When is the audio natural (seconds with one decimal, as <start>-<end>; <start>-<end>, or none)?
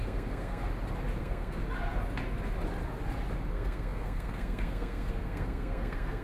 0.6-1.2; 1.6-3.5